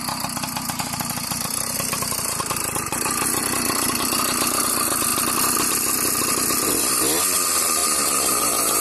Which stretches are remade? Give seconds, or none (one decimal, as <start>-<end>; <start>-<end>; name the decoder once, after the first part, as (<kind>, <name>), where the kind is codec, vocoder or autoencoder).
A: 7.8-8.8 (vocoder, BigVGAN v2)